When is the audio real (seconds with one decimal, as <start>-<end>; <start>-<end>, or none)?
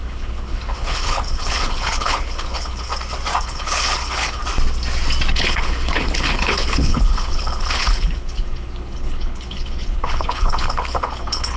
2.9-3.4; 4.4-5.3